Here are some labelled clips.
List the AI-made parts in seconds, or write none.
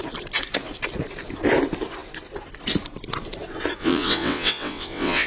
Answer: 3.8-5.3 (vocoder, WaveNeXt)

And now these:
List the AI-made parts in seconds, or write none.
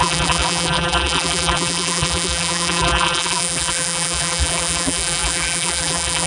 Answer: 0.0-6.3 (vocoder, BigVGAN v2)